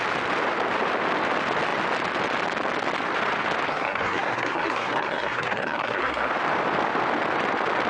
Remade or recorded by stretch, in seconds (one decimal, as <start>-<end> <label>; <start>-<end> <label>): 0.0-3.7 recorded; 3.7-6.3 remade; 6.3-7.9 recorded